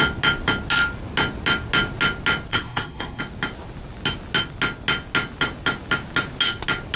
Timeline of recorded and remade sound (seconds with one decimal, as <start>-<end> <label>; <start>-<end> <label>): 0.0-2.5 recorded; 2.5-3.2 remade; 3.2-7.0 recorded